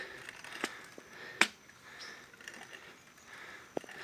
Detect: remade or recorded recorded